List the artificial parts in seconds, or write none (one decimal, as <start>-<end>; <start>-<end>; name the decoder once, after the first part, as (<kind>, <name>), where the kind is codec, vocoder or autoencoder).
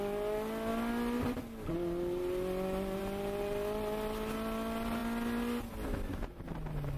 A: none